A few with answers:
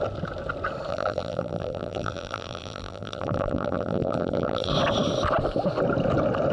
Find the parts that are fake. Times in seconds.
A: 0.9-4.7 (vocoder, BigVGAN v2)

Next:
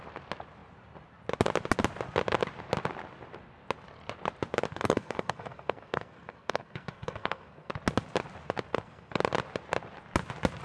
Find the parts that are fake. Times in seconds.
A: 4.7-7.7 (codec, SNAC); 8.7-9.2

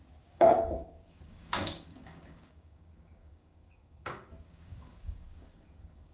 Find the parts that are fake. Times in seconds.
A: 0.0-6.1 (codec, DAC)

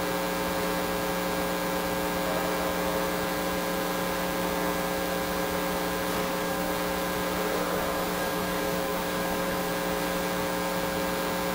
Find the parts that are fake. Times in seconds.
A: 6.2-6.7 (codec, DAC); 7.5-9.7

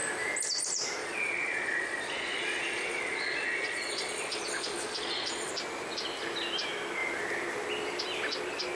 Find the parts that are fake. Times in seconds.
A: 1.0-5.5 (vocoder, Vocos)

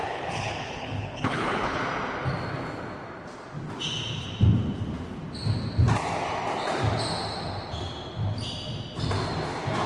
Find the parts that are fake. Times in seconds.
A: 0.0-1.8 (codec, HILCodec)

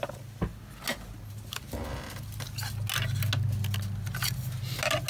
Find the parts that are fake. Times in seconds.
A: none

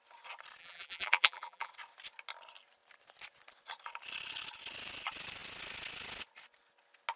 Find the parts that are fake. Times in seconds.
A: 0.6-1.7 (vocoder, BigVGAN v2)